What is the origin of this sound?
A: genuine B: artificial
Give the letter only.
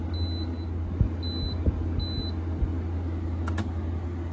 A